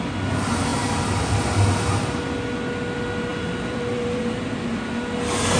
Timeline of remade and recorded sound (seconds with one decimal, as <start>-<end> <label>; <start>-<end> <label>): 0.0-3.3 recorded; 3.3-4.4 remade; 4.4-5.6 recorded